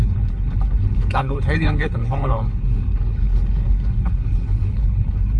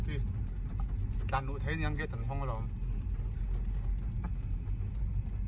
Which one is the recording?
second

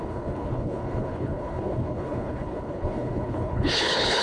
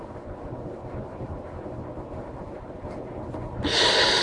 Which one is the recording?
second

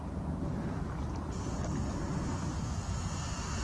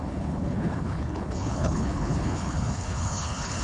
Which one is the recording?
first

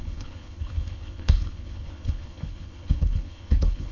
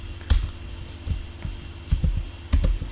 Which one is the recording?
second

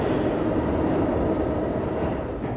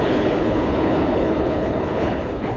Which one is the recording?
first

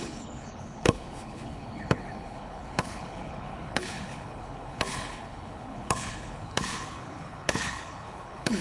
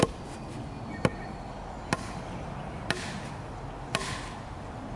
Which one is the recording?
second